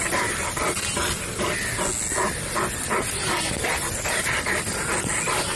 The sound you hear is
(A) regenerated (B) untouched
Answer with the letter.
B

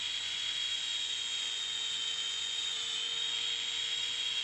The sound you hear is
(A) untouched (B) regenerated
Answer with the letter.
B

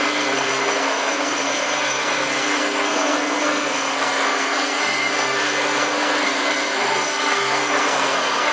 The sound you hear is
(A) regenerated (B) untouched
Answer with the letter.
A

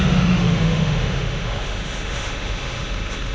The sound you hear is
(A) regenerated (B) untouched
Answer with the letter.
A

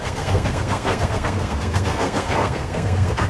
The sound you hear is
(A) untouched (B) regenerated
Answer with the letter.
B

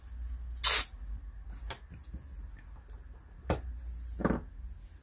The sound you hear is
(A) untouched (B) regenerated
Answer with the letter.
A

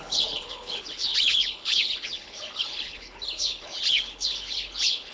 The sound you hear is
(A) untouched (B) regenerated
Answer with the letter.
B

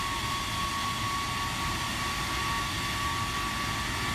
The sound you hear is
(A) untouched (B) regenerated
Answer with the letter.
A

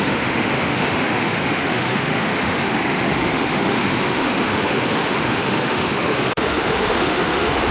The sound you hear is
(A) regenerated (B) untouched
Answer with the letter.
A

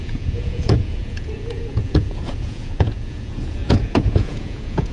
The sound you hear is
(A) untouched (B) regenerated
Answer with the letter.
B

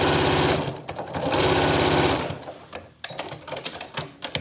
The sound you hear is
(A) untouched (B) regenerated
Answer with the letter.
A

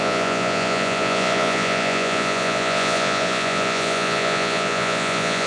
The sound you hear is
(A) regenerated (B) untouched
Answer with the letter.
A